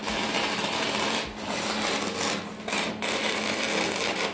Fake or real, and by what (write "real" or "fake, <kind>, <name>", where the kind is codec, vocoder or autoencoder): real